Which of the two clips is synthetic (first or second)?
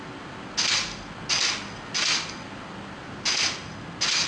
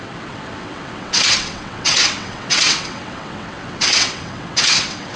second